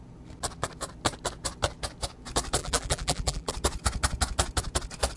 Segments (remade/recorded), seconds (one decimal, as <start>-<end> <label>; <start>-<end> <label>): 0.0-2.6 recorded; 2.6-3.5 remade; 3.5-5.2 recorded

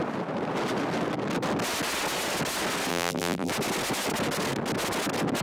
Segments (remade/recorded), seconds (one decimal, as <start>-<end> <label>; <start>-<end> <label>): 0.0-2.9 recorded; 2.9-3.5 remade; 3.5-5.4 recorded

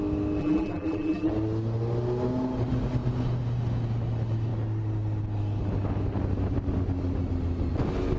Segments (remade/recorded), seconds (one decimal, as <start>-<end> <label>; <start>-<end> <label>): 0.0-0.4 recorded; 0.4-1.3 remade; 1.3-8.2 recorded

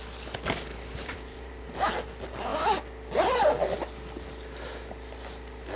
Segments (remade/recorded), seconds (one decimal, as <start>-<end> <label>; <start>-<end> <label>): 0.0-0.7 recorded; 0.7-1.9 remade; 1.9-5.8 recorded

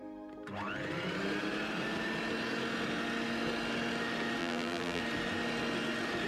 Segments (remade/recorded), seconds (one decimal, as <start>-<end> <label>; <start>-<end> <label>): 0.0-4.4 recorded; 4.4-5.0 remade; 5.0-6.3 recorded